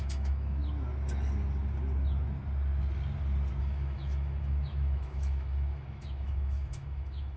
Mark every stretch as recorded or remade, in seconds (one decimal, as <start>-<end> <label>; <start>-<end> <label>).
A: 0.0-0.6 remade; 0.6-3.6 recorded; 3.6-7.4 remade